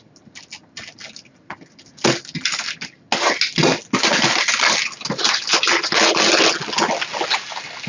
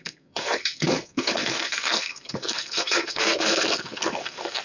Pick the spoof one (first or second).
second